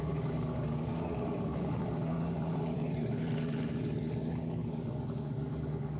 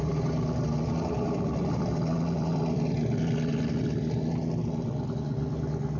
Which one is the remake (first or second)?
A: first